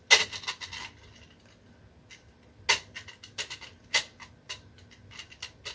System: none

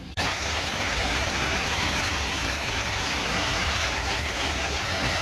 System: codec, SNAC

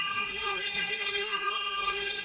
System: codec, SNAC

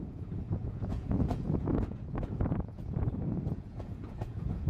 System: vocoder, Vocos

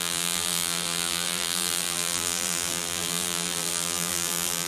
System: vocoder, BigVGAN v2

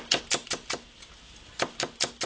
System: none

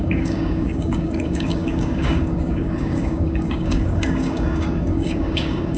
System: codec, DAC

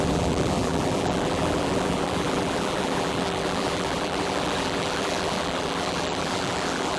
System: vocoder, BigVGAN v2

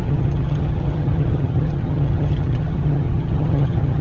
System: vocoder, HiFi-GAN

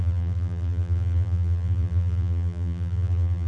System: vocoder, BigVGAN v2